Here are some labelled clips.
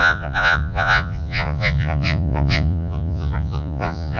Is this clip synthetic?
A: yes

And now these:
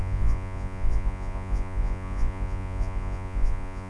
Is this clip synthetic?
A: yes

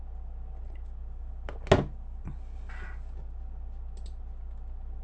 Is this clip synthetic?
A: no